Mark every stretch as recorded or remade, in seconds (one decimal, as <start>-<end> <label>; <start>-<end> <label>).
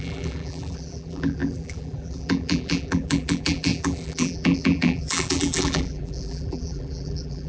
0.0-7.5 remade